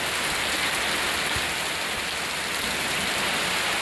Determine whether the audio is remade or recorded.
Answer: recorded